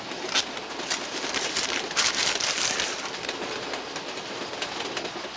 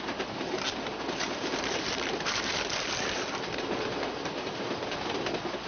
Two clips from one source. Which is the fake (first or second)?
second